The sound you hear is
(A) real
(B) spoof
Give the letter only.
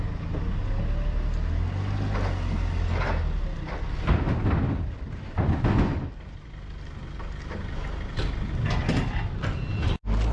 A